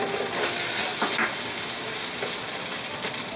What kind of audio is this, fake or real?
real